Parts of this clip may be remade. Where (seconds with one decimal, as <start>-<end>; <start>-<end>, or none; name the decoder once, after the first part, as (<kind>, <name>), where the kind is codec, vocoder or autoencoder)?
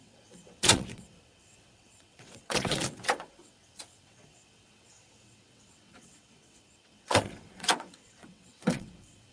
0.0-9.3 (vocoder, WaveNeXt)